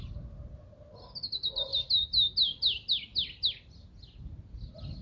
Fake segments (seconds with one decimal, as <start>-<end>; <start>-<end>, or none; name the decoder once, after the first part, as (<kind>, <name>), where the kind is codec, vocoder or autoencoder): none